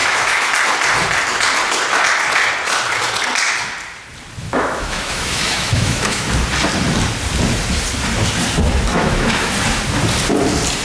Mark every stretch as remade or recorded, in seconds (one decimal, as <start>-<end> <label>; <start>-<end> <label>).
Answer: 0.0-0.5 remade; 0.5-4.4 recorded; 4.4-6.3 remade; 6.3-8.9 recorded; 8.9-9.5 remade; 9.5-10.8 recorded